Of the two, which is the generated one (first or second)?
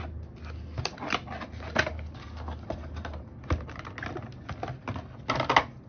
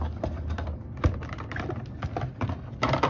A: second